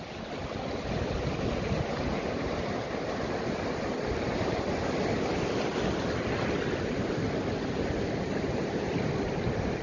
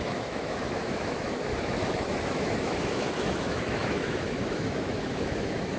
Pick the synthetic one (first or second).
second